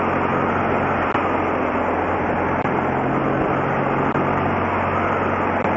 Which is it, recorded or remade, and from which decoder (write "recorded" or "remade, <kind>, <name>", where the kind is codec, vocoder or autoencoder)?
recorded